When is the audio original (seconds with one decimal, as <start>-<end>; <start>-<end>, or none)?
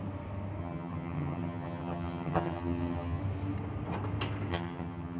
0.0-0.6; 3.2-4.5